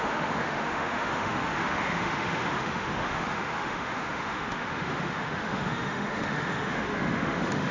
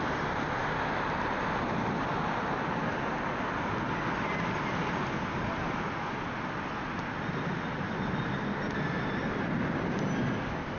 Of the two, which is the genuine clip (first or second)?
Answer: second